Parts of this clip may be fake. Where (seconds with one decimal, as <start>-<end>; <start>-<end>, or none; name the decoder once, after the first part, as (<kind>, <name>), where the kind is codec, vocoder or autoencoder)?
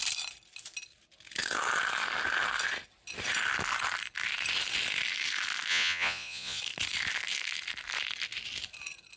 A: 5.7-6.6 (vocoder, Vocos)